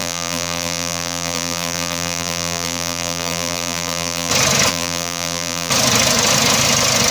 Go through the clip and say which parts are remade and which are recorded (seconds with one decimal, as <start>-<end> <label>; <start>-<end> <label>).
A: 0.0-4.3 remade; 4.3-4.7 recorded; 4.7-5.7 remade; 5.7-7.1 recorded